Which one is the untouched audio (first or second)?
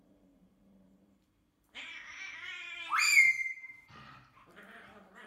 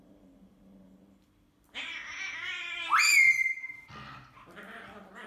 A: second